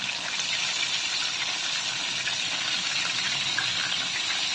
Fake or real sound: real